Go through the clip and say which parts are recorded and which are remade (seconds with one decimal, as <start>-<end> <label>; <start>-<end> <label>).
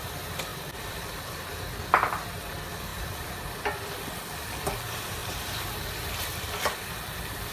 0.0-0.5 recorded; 0.5-1.2 remade; 1.2-2.9 recorded; 2.9-4.2 remade; 4.2-5.2 recorded; 5.2-7.5 remade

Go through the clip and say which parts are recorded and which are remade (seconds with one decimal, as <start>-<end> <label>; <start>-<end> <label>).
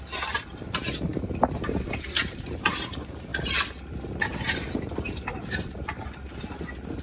0.0-3.3 remade; 3.3-4.1 recorded; 4.1-7.0 remade